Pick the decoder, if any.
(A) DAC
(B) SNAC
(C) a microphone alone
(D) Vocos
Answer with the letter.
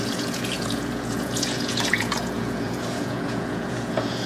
D